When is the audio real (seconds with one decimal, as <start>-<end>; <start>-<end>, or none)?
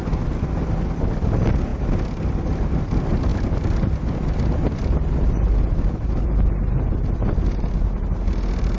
0.0-8.8